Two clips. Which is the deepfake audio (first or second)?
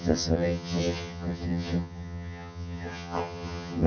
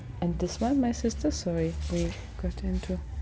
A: first